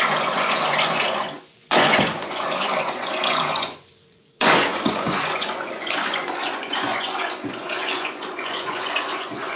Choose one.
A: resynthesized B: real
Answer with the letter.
A